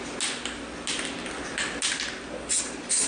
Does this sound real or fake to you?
real